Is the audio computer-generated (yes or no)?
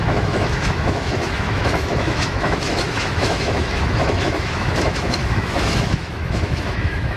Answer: yes